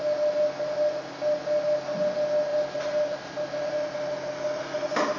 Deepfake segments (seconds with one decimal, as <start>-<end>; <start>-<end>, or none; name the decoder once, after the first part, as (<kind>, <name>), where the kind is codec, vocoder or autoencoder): none